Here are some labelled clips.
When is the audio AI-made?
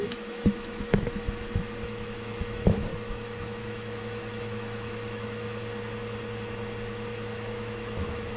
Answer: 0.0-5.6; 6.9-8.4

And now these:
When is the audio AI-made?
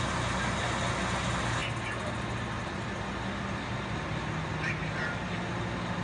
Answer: none